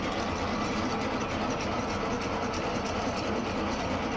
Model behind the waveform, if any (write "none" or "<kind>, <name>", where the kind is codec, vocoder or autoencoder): none